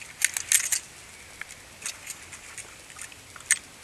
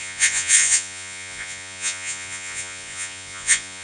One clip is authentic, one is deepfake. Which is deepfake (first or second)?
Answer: second